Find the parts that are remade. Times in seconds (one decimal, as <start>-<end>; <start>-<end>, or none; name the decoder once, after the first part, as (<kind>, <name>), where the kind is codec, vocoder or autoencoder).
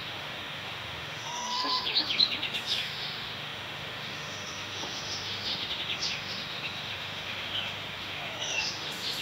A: 0.0-9.2 (autoencoder, DAC-VAE)